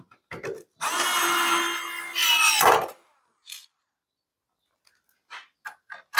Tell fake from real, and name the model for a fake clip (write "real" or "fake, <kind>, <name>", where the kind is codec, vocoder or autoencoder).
real